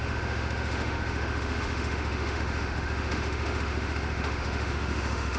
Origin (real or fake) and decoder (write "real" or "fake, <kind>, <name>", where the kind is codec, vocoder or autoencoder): fake, autoencoder, DAC-VAE